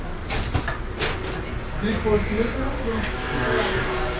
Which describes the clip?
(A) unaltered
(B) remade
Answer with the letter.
A